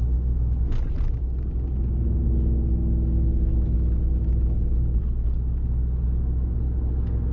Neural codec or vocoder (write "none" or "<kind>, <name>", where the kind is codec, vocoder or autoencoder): none